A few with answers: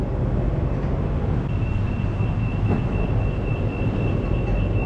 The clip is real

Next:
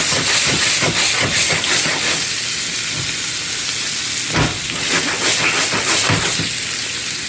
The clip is real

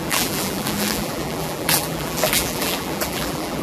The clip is fake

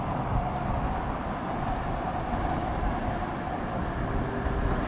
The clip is real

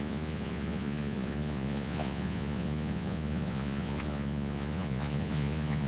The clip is fake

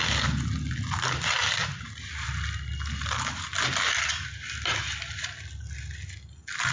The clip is real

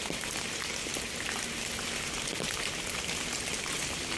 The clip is real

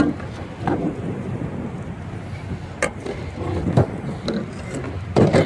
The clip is real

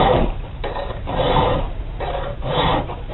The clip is fake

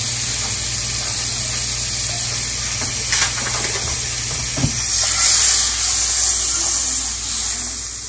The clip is real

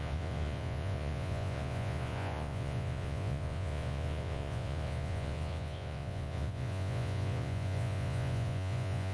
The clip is fake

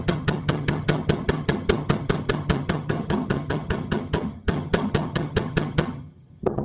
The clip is fake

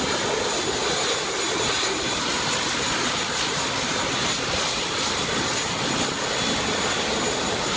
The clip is real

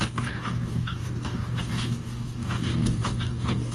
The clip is fake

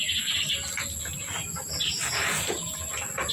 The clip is real